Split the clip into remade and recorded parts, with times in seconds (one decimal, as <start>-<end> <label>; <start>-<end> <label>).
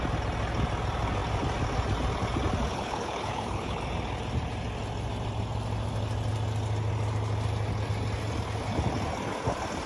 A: 0.0-2.7 recorded; 2.7-3.8 remade; 3.8-9.9 recorded